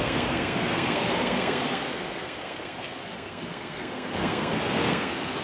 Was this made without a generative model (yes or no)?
no